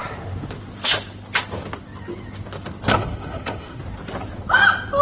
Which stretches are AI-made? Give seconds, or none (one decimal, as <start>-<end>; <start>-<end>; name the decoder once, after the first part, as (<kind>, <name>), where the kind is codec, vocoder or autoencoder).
2.9-3.8 (codec, SNAC)